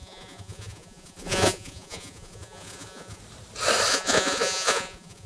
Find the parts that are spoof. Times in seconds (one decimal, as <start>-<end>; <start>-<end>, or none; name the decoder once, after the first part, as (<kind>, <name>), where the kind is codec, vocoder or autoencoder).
0.0-3.2 (vocoder, Vocos); 3.9-5.3